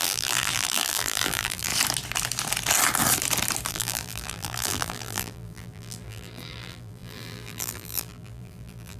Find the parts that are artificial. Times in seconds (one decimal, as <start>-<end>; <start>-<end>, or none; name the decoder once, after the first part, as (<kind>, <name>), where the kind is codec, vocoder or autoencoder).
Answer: 0.0-1.7 (vocoder, BigVGAN v2); 3.7-9.0